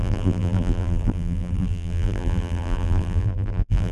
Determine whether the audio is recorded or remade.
remade